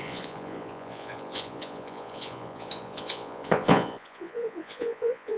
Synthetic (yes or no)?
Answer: yes